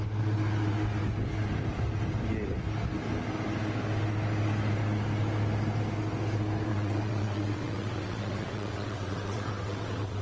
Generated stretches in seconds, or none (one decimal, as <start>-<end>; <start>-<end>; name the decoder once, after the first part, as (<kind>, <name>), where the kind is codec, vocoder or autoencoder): 6.7-10.2 (vocoder, WaveNeXt)